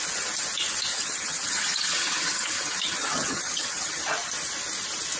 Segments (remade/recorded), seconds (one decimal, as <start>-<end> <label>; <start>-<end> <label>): 0.0-0.9 recorded; 0.9-4.0 remade; 4.0-5.2 recorded